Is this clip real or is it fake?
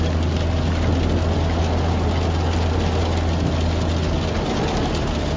real